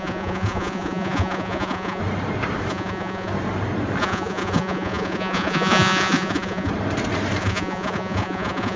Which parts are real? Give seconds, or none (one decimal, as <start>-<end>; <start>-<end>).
2.0-2.7; 3.3-4.0; 6.7-7.4